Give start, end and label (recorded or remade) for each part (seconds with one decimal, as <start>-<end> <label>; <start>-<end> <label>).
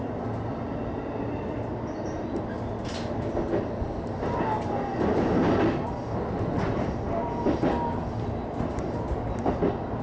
0.0-10.0 recorded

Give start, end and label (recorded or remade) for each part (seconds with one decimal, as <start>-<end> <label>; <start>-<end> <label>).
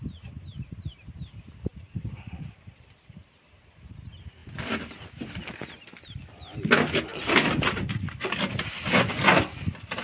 0.0-1.7 recorded; 1.7-3.4 remade; 3.4-7.1 recorded; 7.1-7.6 remade; 7.6-10.0 recorded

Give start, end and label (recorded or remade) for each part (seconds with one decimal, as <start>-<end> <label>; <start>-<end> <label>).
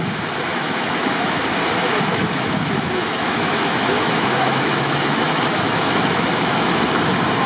0.0-0.5 recorded; 0.5-1.4 remade; 1.4-2.1 recorded; 2.1-6.6 remade; 6.6-7.5 recorded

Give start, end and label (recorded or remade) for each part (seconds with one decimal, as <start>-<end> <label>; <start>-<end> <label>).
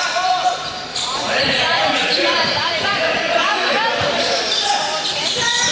0.0-0.9 recorded; 0.9-3.7 remade; 3.7-5.7 recorded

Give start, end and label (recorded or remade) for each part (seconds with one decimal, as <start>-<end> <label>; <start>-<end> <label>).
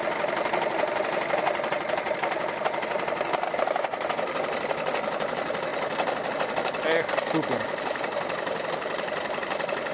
0.0-9.9 recorded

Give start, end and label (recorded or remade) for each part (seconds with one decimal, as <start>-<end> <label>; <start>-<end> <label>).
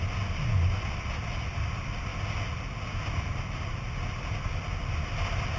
0.0-5.6 recorded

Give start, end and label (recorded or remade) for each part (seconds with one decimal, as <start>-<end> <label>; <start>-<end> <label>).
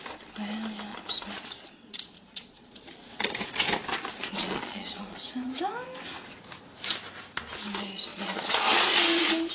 0.0-0.9 recorded; 0.9-3.3 remade; 3.3-4.2 recorded; 4.2-5.6 remade; 5.6-8.1 recorded; 8.1-9.5 remade